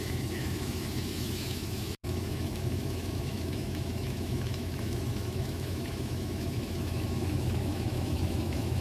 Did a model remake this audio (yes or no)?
yes